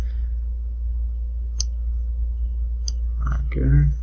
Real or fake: real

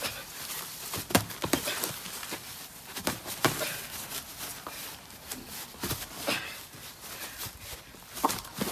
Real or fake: real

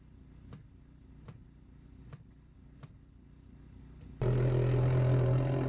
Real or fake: real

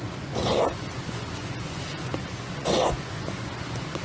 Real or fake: fake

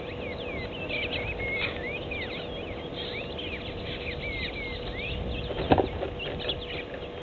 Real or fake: real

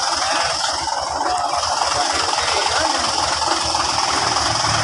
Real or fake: real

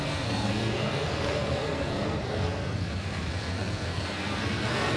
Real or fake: fake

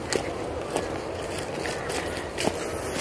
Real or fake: real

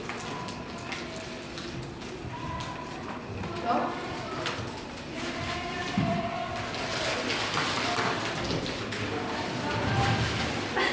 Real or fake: real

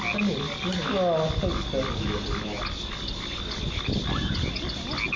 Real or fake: real